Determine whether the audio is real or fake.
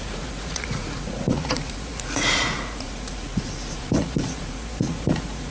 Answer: fake